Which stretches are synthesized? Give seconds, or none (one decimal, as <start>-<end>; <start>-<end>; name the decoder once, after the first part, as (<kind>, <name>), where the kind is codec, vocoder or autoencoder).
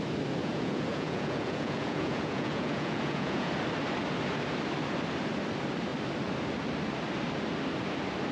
0.4-3.5 (vocoder, Vocos)